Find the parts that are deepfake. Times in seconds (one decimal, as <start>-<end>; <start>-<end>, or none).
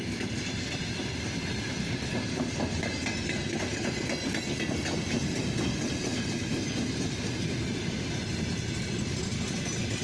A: none